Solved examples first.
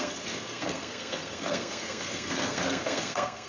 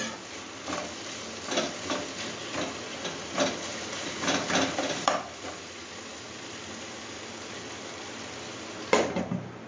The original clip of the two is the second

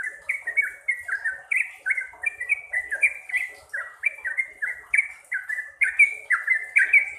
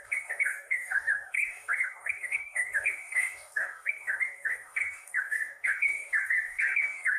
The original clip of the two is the first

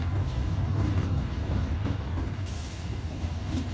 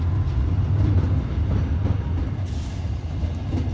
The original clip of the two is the second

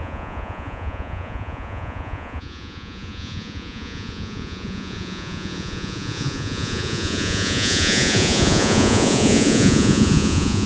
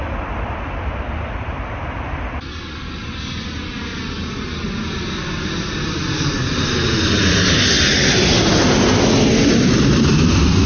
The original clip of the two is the second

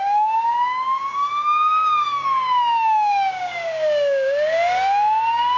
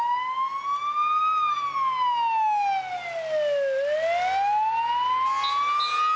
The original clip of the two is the second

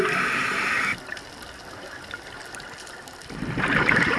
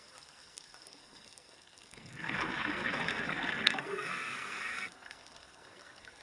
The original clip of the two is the first